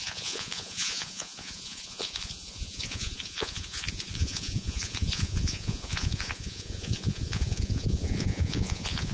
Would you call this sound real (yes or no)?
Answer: no